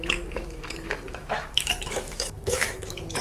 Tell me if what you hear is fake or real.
fake